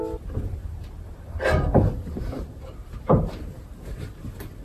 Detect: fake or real fake